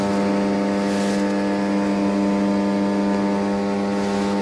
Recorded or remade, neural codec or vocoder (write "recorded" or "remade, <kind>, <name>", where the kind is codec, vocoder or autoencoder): recorded